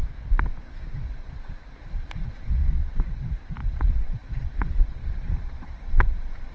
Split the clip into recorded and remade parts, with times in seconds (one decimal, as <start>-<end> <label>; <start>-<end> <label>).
0.0-1.8 recorded; 1.8-3.2 remade; 3.2-3.6 recorded; 3.6-6.5 remade